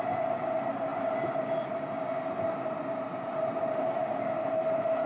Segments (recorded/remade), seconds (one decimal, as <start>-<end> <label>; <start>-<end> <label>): 0.0-5.1 recorded